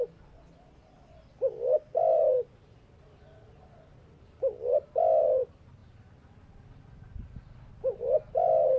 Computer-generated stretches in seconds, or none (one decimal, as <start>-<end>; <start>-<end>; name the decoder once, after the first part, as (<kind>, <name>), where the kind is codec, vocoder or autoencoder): none